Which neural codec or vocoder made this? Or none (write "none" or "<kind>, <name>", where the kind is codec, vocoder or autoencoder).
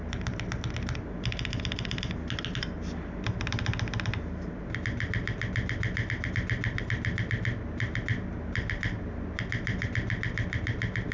none